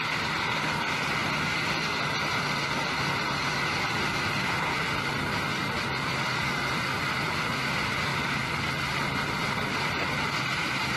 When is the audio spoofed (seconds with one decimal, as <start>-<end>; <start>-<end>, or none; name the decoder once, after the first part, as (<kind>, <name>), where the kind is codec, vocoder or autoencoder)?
5.6-6.4 (vocoder, BigVGAN v2)